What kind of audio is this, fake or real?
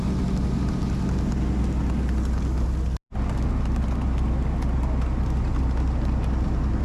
real